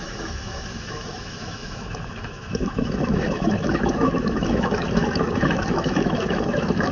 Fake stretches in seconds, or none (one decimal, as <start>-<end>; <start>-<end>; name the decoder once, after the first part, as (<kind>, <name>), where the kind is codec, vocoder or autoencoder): 0.0-6.9 (autoencoder, DAC-VAE)